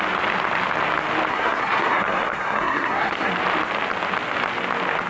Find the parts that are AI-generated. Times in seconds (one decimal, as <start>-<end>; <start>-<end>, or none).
1.3-3.3

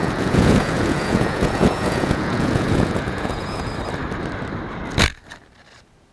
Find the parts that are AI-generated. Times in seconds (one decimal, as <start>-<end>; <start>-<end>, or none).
0.0-3.7

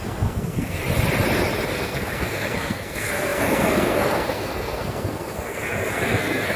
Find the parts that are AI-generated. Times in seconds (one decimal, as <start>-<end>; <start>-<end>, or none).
0.0-0.8; 1.7-6.6